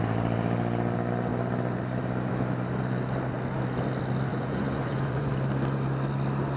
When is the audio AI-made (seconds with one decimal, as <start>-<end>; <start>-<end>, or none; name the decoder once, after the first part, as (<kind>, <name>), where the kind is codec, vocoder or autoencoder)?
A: 4.3-5.3 (vocoder, Vocos)

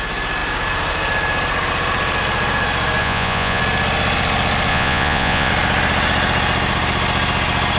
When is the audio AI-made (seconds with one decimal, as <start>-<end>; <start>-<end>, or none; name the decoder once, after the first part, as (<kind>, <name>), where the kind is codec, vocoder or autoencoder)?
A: 3.0-3.6 (vocoder, Vocos); 4.7-5.5

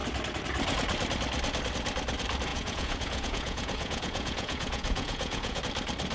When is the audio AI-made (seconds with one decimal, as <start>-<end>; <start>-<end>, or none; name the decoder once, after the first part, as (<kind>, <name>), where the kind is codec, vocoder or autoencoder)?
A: 2.5-5.6 (vocoder, Vocos)

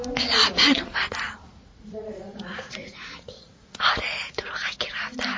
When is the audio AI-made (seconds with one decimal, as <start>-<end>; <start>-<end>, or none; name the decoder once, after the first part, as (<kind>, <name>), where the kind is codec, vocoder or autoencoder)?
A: 1.5-4.7 (vocoder, Vocos)

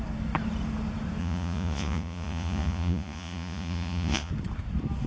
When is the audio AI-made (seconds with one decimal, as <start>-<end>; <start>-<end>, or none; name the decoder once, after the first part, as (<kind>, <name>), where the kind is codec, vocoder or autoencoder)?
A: 1.2-4.3 (vocoder, Vocos)

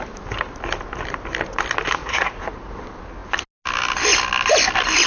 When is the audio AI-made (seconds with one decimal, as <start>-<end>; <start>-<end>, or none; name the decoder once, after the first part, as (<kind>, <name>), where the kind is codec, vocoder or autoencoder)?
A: 2.0-2.8 (vocoder, Vocos)

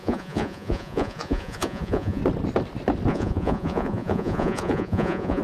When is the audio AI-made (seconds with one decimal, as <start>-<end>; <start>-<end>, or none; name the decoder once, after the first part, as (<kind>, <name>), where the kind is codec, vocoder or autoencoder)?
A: 0.0-2.2 (vocoder, Vocos); 3.1-5.4

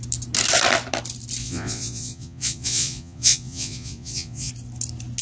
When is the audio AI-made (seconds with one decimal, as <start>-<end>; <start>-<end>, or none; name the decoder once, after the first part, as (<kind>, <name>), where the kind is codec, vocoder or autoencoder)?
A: 1.4-4.5 (vocoder, Vocos)